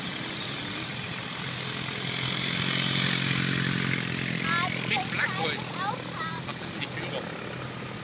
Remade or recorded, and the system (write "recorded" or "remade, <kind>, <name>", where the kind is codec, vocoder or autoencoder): recorded